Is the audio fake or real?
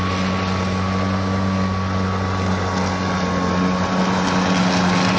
real